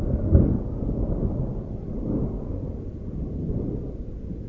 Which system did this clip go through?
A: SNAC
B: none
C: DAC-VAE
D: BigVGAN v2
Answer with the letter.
B